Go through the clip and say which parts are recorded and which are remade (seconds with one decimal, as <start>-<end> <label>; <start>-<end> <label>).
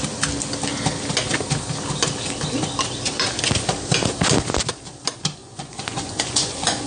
0.0-5.4 recorded; 5.4-6.9 remade